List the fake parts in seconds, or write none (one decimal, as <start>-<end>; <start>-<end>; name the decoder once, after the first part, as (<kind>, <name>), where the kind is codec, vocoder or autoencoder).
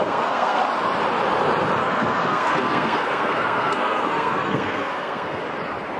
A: 0.0-0.6 (codec, SNAC); 1.8-5.4